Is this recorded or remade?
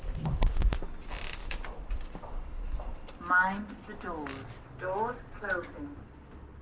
recorded